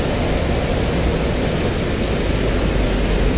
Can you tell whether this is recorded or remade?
recorded